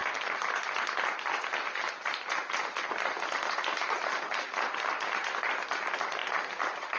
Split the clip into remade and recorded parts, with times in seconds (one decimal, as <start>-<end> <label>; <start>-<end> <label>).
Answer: 0.0-7.0 recorded